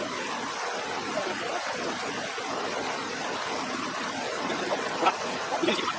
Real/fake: real